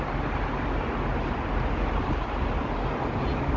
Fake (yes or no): no